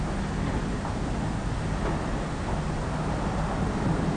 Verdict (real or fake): real